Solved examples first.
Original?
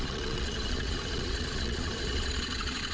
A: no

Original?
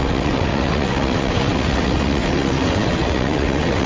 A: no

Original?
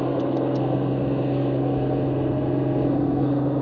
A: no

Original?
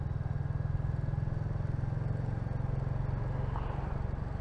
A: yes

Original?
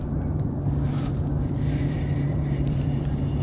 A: no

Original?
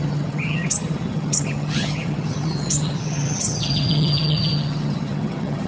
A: no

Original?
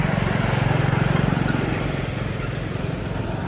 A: yes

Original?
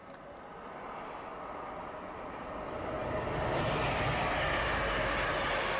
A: yes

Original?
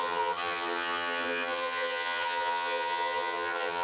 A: no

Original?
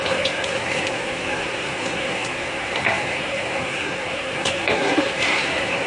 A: no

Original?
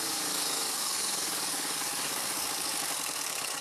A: no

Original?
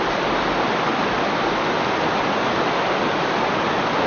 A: yes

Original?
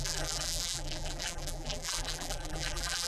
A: no